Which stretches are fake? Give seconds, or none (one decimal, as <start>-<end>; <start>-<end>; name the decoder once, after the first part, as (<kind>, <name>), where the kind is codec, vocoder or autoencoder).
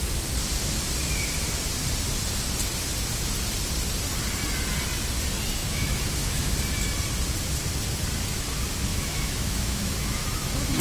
5.6-6.6 (autoencoder, DAC-VAE); 8.9-10.8